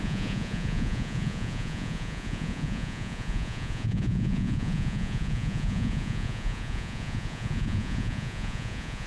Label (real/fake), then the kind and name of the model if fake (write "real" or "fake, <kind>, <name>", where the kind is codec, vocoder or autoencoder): fake, vocoder, Vocos